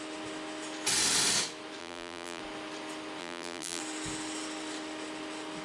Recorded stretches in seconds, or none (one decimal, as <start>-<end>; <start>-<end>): 0.0-1.8; 2.4-3.2; 3.8-5.6